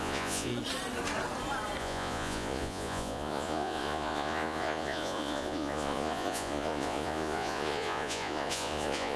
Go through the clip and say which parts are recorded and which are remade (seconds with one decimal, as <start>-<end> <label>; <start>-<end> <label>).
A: 0.0-0.5 remade; 0.5-1.8 recorded; 1.8-9.2 remade